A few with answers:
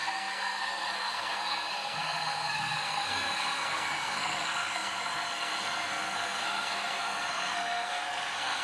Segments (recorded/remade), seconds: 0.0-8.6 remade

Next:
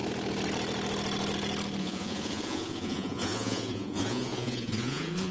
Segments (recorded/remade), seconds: 0.0-1.8 recorded; 1.8-5.3 remade

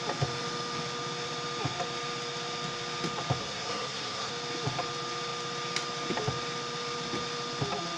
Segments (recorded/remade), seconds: 0.0-3.4 recorded; 3.4-4.3 remade; 4.3-8.0 recorded

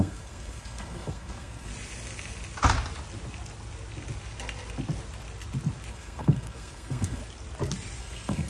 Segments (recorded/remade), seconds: 0.0-1.7 remade; 1.7-5.9 recorded; 5.9-7.2 remade; 7.2-8.0 recorded; 8.0-8.5 remade

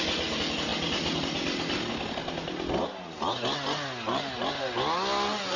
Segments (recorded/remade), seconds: 0.0-5.6 recorded

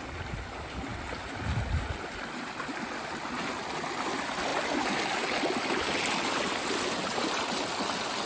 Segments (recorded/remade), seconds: 0.0-8.3 recorded

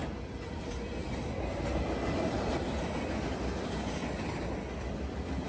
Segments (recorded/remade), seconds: 0.0-5.5 recorded